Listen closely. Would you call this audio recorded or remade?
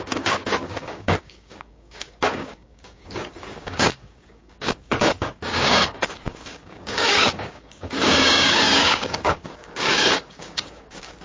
remade